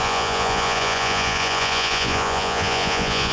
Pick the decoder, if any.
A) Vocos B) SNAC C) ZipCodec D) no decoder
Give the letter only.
A